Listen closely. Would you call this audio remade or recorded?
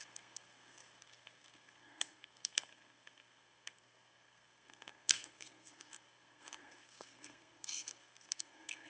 remade